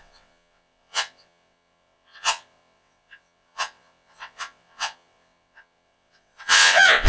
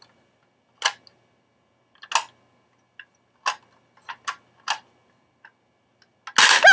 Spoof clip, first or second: first